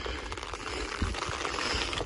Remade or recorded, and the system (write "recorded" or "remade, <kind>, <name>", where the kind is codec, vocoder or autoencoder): recorded